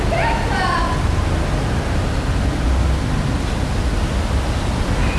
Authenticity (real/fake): real